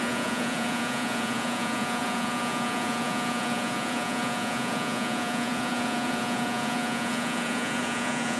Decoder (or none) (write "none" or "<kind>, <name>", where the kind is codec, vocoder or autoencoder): vocoder, Vocos